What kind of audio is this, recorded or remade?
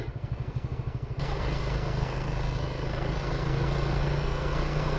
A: remade